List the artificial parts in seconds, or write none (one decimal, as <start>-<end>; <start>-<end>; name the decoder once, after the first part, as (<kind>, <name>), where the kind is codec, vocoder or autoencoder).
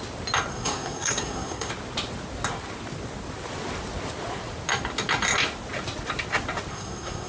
0.5-1.7 (codec, SNAC); 6.7-7.3